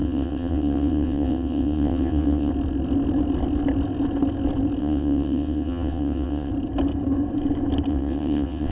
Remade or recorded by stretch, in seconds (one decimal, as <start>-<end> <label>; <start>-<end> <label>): 0.0-2.5 remade; 2.5-4.8 recorded; 4.8-6.5 remade; 6.5-7.9 recorded; 7.9-8.7 remade